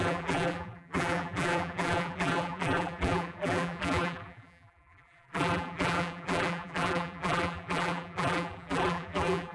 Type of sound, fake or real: fake